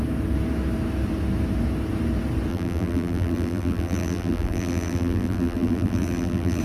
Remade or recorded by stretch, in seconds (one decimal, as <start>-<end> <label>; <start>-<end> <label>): 0.0-2.5 recorded; 2.5-6.6 remade